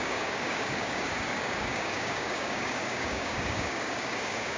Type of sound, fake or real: fake